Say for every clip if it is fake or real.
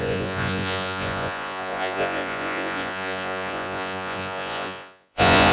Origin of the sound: fake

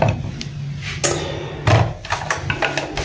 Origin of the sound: real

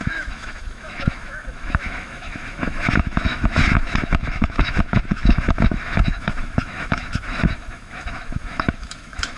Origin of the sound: fake